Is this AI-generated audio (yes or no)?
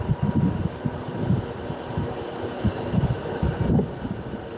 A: no